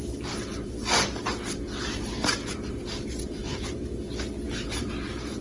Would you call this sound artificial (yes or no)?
no